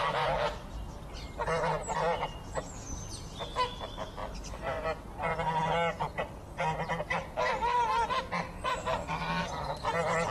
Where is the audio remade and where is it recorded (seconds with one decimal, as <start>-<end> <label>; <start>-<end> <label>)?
0.0-10.3 recorded